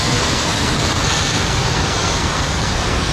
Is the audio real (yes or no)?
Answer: no